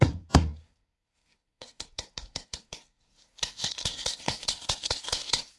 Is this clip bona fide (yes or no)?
no